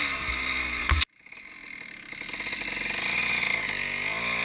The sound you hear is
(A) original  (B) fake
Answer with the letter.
A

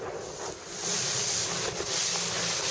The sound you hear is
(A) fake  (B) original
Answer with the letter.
B